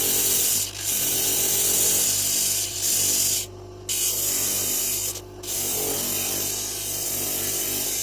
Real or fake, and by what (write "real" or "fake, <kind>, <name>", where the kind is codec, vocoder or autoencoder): real